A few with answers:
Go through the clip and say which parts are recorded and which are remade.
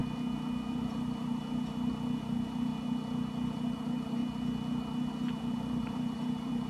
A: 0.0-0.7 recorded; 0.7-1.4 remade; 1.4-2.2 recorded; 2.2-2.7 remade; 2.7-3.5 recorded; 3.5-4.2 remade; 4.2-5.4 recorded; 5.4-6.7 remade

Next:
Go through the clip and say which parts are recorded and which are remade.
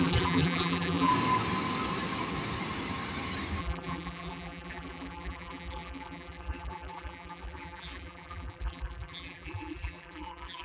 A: 0.0-1.1 remade; 1.1-3.6 recorded; 3.6-10.6 remade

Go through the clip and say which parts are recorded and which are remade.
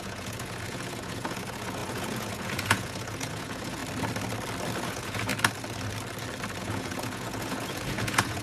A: 0.0-3.8 remade; 3.8-4.8 recorded; 4.8-5.3 remade; 5.3-6.6 recorded; 6.6-8.4 remade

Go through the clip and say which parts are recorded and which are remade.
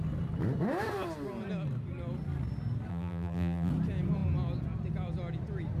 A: 0.0-2.9 recorded; 2.9-3.7 remade; 3.7-5.8 recorded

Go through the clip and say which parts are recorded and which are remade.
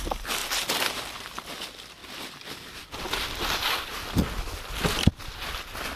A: 0.0-6.0 recorded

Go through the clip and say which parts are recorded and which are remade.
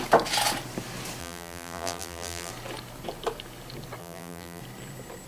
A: 0.0-1.2 recorded; 1.2-2.5 remade; 2.5-4.0 recorded; 4.0-4.6 remade; 4.6-5.3 recorded